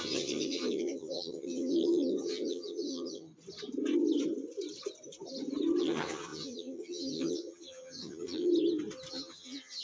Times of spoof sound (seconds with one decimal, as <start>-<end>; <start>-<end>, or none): 0.0-3.3; 5.8-8.5; 9.1-9.8